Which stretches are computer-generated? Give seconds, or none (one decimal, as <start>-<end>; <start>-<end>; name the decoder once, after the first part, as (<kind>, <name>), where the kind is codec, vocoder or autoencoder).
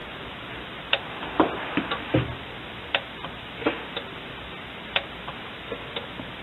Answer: 0.0-1.8 (vocoder, BigVGAN v2)